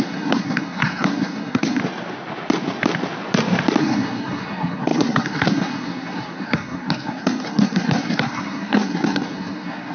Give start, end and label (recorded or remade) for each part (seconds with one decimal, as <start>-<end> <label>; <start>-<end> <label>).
0.0-1.8 remade; 1.8-3.8 recorded; 3.8-9.9 remade